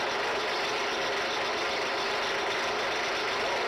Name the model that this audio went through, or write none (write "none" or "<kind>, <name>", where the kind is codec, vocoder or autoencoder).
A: none